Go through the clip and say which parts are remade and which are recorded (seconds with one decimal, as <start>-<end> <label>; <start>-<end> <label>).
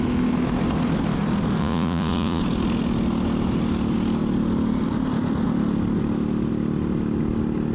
0.0-1.6 recorded; 1.6-2.4 remade; 2.4-7.7 recorded